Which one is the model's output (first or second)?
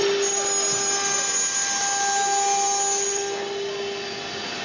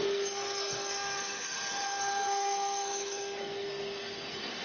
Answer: second